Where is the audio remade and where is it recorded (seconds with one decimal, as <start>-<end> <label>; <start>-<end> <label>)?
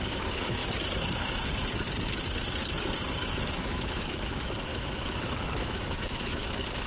0.0-0.6 remade; 0.6-3.3 recorded; 3.3-6.4 remade; 6.4-6.9 recorded